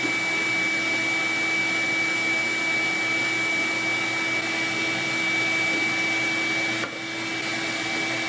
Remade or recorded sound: recorded